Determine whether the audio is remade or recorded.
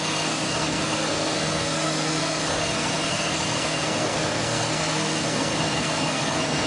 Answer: remade